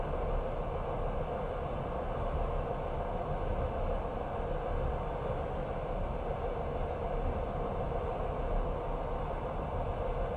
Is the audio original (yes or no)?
yes